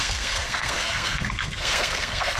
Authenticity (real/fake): fake